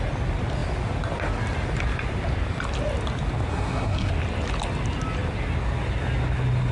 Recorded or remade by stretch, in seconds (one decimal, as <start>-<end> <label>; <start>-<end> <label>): 0.0-3.5 recorded; 3.5-4.1 remade; 4.1-6.7 recorded